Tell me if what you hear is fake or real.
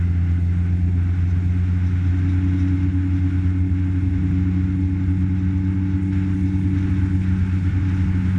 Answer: real